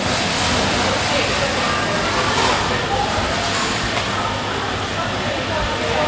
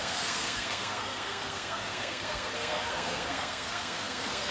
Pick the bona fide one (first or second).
first